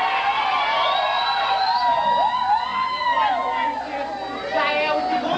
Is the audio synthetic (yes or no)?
no